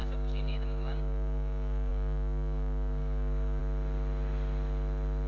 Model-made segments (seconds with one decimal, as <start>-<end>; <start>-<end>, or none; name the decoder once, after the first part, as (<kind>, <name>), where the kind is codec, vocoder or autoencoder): 0.0-3.6 (codec, DAC)

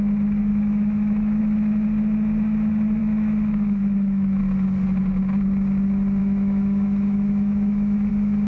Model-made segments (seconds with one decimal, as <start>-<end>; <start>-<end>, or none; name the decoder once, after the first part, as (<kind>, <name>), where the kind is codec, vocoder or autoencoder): 0.5-1.4 (autoencoder, DAC-VAE); 3.0-4.4; 6.2-8.1

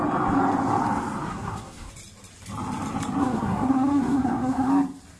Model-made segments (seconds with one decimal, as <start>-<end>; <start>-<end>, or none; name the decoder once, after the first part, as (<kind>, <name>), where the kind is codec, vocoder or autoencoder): 1.3-1.9 (codec, SNAC); 3.2-4.7

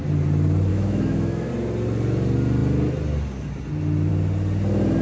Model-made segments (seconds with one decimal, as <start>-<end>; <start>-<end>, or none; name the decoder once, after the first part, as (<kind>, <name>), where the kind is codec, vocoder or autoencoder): 0.7-1.5 (autoencoder, DAC-VAE)